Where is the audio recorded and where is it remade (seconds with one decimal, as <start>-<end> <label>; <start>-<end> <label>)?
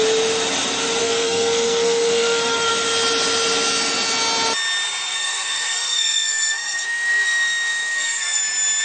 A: 0.0-1.0 recorded; 1.0-2.7 remade; 2.7-5.1 recorded; 5.1-8.4 remade; 8.4-8.8 recorded